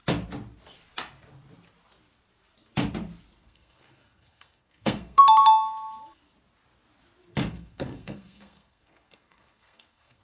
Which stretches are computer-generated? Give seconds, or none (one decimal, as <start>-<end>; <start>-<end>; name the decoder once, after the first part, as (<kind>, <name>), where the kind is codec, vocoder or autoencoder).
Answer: 3.4-5.2 (codec, SNAC); 7.5-10.2